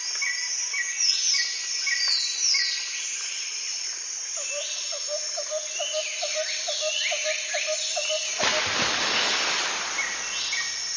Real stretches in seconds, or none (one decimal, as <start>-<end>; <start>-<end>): 0.0-11.0